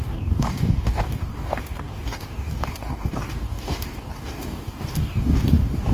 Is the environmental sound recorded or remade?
remade